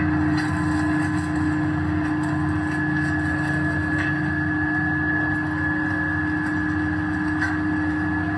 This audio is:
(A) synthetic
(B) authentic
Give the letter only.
B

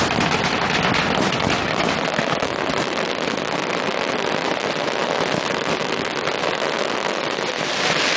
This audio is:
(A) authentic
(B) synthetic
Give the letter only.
A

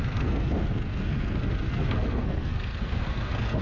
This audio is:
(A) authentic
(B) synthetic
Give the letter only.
B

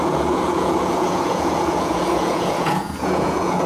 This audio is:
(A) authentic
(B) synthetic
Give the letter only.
B